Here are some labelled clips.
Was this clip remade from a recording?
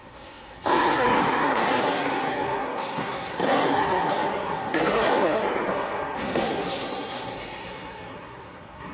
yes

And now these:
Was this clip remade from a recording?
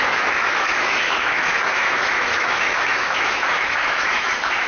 yes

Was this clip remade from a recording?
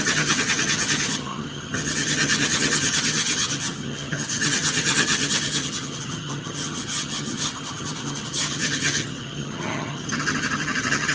yes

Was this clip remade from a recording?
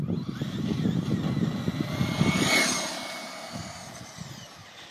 no